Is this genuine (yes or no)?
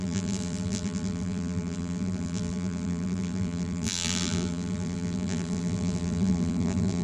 no